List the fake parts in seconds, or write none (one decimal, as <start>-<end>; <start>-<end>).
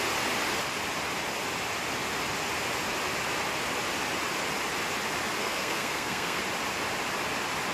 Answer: 5.4-6.4